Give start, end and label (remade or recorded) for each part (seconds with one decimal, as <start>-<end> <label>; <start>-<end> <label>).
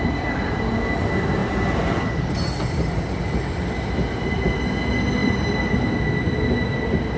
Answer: 0.0-5.2 recorded; 5.2-5.9 remade; 5.9-7.2 recorded